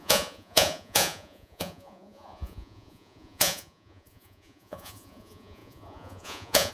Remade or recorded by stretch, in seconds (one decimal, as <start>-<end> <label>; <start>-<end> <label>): 0.0-6.7 remade